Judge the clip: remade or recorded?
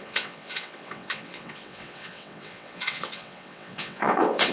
remade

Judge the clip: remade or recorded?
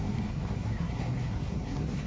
remade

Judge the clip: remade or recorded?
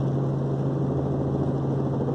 recorded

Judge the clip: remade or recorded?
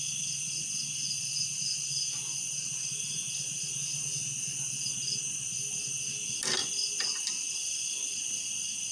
recorded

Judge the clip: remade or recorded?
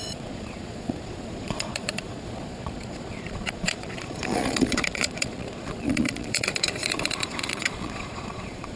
remade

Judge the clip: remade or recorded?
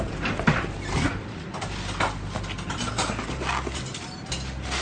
recorded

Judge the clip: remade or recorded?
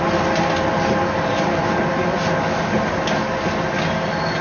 recorded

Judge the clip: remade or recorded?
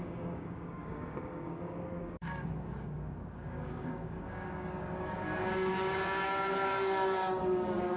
remade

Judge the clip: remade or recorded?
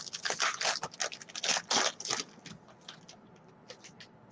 recorded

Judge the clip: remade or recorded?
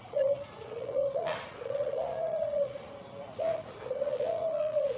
remade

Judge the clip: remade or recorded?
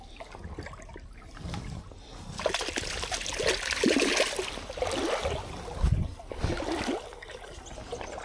recorded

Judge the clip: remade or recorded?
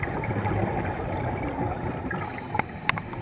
remade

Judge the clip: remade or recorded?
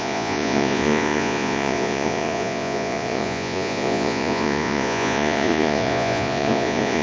remade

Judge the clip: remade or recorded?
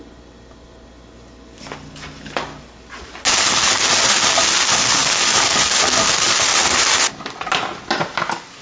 recorded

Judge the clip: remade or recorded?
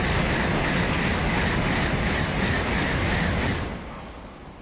recorded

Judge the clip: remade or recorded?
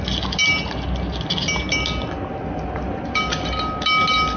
recorded